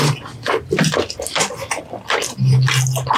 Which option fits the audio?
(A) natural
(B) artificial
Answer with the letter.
A